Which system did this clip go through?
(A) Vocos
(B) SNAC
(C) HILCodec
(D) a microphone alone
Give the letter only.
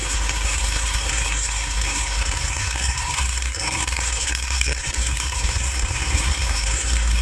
B